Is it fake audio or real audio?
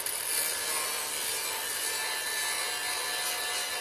real